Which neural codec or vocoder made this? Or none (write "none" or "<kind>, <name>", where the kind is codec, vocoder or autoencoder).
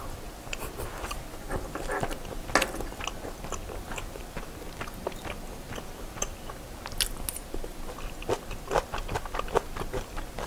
none